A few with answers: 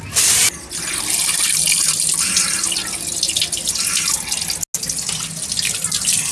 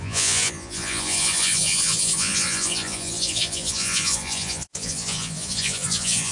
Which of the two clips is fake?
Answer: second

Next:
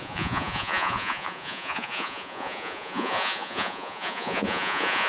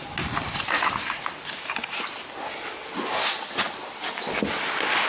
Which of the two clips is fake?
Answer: first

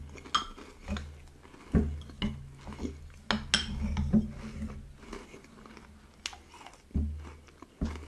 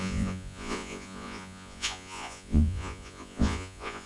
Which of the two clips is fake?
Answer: second